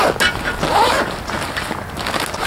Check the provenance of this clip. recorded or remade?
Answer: recorded